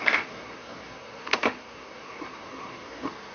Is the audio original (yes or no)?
no